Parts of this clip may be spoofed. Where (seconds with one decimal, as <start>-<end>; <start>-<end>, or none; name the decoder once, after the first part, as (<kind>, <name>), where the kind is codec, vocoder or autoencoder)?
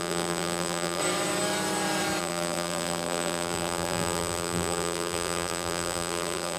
0.0-1.0 (vocoder, BigVGAN v2); 2.2-6.6